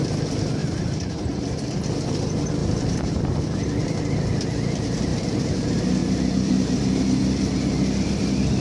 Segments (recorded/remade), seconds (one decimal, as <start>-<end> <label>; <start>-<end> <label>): 0.0-0.6 recorded; 0.6-1.9 remade; 1.9-2.6 recorded; 2.6-3.4 remade; 3.4-5.1 recorded; 5.1-5.6 remade; 5.6-6.0 recorded; 6.0-6.5 remade; 6.5-8.6 recorded